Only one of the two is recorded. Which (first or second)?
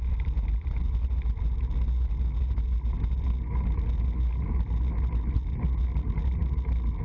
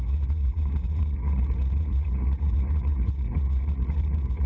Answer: first